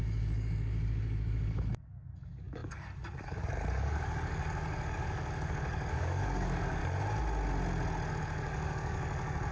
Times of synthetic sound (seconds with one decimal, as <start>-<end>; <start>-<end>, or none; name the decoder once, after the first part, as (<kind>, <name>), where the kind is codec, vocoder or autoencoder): 0.0-6.8 (codec, DAC); 8.1-9.5